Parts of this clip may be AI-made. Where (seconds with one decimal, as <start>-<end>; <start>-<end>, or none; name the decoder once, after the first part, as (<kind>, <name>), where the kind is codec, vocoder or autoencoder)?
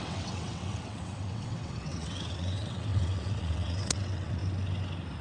0.0-4.4 (vocoder, WaveNeXt)